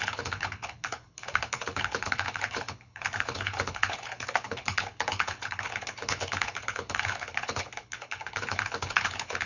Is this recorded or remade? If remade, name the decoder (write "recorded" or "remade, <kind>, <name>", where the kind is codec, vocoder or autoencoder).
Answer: remade, codec, HILCodec